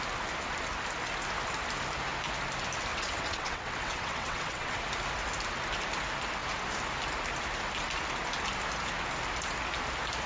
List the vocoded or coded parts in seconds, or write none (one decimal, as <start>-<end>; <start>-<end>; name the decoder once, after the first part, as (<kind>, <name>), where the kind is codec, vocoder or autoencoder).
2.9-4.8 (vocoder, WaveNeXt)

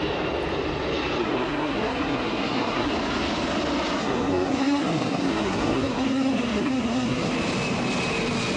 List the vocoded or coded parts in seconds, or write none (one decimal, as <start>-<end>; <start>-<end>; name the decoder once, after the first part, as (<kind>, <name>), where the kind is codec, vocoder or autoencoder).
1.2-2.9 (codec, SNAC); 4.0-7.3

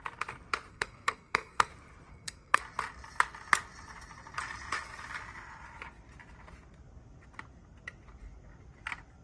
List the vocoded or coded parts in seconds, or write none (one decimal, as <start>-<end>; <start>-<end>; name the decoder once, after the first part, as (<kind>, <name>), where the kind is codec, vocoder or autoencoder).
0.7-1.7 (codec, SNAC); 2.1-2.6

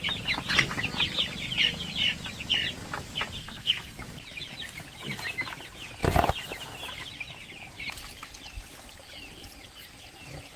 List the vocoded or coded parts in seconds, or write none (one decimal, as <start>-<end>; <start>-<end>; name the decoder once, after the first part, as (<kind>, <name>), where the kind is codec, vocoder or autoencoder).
3.4-4.0 (codec, SNAC)

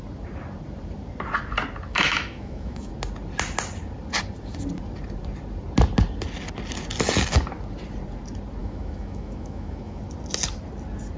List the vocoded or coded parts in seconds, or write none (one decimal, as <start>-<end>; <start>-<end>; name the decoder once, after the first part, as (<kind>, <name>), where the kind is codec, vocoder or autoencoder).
1.9-2.9 (autoencoder, DAC-VAE); 8.6-10.0